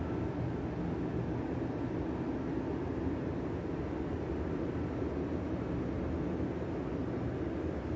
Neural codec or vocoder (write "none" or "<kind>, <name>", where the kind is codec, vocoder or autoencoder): none